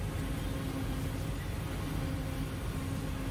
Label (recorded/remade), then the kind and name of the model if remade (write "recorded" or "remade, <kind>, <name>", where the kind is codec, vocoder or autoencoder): recorded